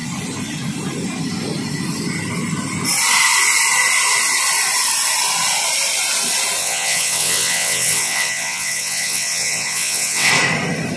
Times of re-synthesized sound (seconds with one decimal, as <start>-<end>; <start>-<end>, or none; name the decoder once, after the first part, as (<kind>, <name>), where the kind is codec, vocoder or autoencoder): 6.6-10.3 (vocoder, WaveNeXt)

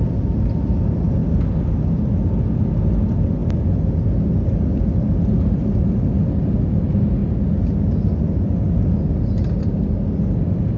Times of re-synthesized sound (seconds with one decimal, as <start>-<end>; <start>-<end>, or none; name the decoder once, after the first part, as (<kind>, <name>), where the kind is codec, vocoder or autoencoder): none

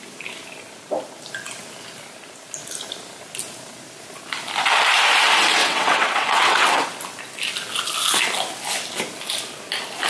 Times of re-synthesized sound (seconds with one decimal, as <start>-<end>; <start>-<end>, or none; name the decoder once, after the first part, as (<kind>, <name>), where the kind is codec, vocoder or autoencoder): 5.6-6.8 (vocoder, WaveNeXt)

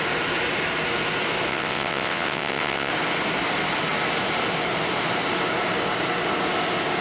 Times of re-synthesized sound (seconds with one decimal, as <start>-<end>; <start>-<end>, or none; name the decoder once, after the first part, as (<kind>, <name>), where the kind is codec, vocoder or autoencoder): 1.5-2.9 (vocoder, WaveNeXt)